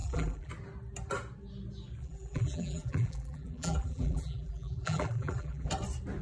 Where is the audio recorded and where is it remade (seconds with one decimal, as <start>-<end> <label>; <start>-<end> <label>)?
0.0-0.5 remade; 0.5-2.0 recorded; 2.0-5.7 remade; 5.7-6.2 recorded